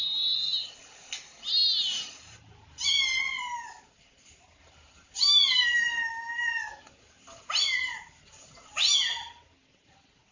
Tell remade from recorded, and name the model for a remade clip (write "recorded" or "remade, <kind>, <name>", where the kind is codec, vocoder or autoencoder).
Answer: recorded